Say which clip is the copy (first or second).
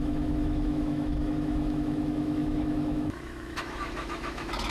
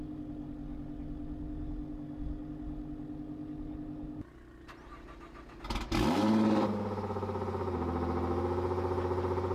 first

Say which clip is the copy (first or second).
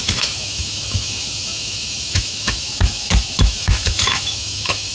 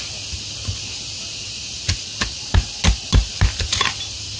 first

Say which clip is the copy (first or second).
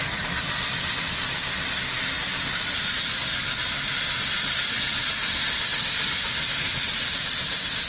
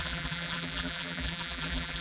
second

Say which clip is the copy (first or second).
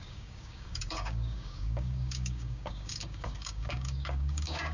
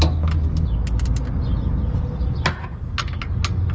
first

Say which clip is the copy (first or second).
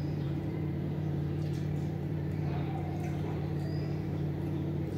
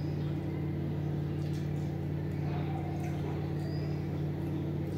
first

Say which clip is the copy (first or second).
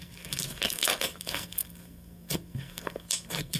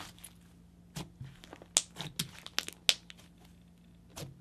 first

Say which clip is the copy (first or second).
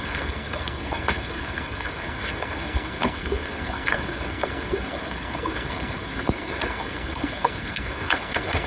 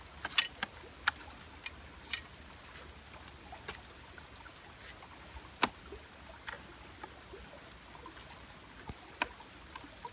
first